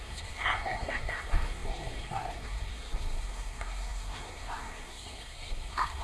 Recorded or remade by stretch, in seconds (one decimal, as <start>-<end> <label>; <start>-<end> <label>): 0.0-6.0 remade